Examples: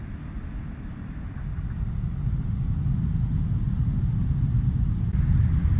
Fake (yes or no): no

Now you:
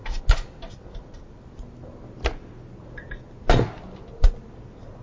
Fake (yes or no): no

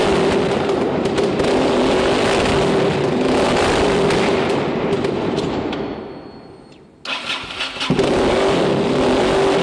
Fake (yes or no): no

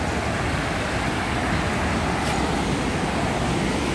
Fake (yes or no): no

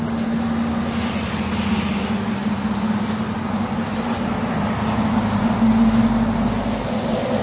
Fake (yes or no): no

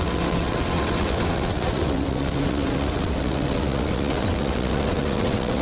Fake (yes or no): yes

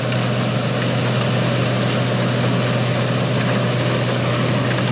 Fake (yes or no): no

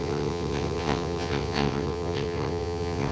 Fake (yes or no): yes